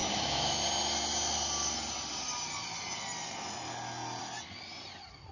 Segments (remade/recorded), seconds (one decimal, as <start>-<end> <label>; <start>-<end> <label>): 0.0-0.6 remade; 0.6-5.3 recorded